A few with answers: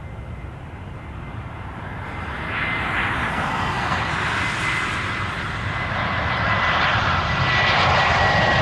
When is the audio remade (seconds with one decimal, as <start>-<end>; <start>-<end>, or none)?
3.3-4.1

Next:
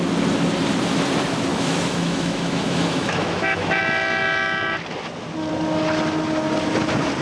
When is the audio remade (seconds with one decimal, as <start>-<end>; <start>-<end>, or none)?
1.5-3.8

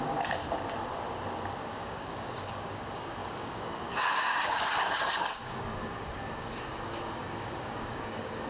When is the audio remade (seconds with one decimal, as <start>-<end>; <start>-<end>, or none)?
0.0-0.4; 1.6-8.5